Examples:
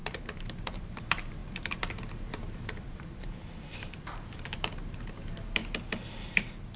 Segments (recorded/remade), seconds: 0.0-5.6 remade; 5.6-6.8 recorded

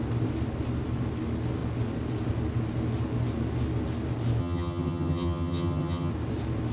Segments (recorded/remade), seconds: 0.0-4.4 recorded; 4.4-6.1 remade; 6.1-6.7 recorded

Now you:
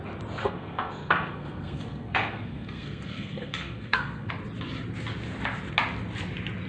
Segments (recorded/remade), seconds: 0.0-0.4 recorded; 0.4-4.3 remade; 4.3-6.7 recorded